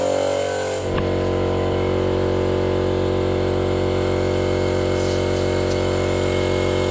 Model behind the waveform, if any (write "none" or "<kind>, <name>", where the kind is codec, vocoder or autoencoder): none